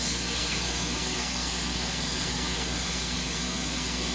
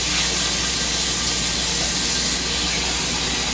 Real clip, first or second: second